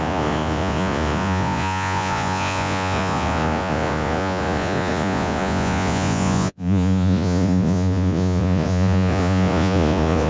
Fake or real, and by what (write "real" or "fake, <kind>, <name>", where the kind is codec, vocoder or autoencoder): fake, vocoder, Vocos